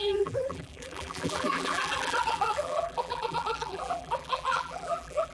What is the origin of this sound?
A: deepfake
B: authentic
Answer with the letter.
A